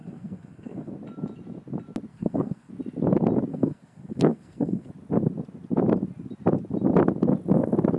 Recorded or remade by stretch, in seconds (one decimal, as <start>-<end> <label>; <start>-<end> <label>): 0.0-0.9 remade; 0.9-2.1 recorded; 2.1-2.7 remade; 2.7-3.5 recorded; 3.5-4.9 remade; 4.9-8.0 recorded

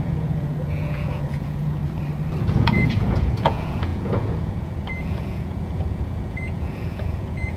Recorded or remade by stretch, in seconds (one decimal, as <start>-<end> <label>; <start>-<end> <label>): 0.0-1.8 remade; 1.8-2.4 recorded; 2.4-7.6 remade

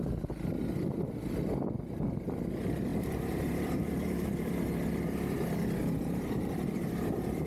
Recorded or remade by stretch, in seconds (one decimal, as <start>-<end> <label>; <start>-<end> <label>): 0.0-2.9 recorded; 2.9-4.5 remade; 4.5-7.5 recorded

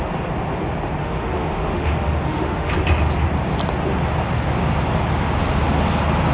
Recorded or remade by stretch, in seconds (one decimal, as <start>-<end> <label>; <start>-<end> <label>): 0.0-1.0 recorded; 1.0-2.7 remade; 2.7-6.3 recorded

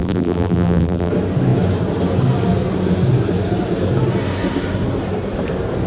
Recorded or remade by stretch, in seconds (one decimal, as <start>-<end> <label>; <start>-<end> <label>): 0.0-1.1 remade; 1.1-5.9 recorded

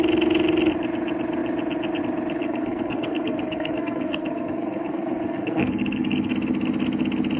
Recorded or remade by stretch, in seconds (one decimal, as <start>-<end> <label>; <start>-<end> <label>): 0.0-2.4 recorded; 2.4-6.3 remade; 6.3-7.4 recorded